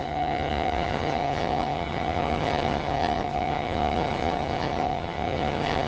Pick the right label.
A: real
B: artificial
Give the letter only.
B